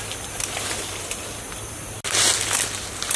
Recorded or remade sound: recorded